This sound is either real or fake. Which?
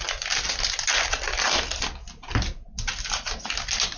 real